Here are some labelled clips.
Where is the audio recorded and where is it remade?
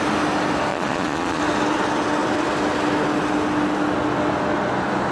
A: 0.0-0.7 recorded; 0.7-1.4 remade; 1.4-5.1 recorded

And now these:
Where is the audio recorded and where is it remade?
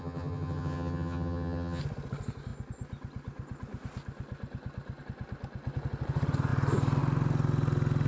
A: 0.0-1.8 remade; 1.8-8.1 recorded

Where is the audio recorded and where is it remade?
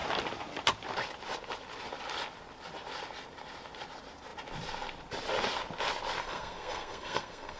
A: 0.0-6.2 recorded; 6.2-7.6 remade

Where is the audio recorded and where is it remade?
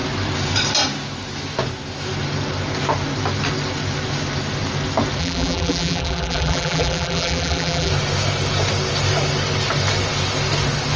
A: 0.0-5.2 recorded; 5.2-7.9 remade; 7.9-11.0 recorded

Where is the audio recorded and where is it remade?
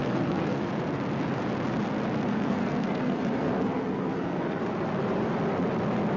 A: 0.0-0.7 remade; 0.7-2.3 recorded; 2.3-4.6 remade; 4.6-6.2 recorded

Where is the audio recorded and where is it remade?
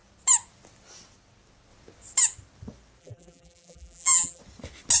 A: 0.0-3.0 recorded; 3.0-4.4 remade; 4.4-5.0 recorded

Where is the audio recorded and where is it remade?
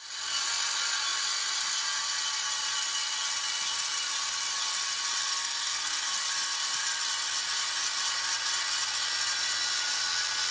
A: 0.0-5.3 recorded; 5.3-6.1 remade; 6.1-10.5 recorded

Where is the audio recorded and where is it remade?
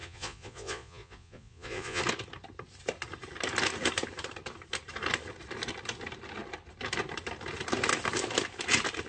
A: 0.0-2.0 remade; 2.0-9.1 recorded